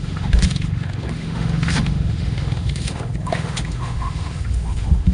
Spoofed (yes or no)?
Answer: yes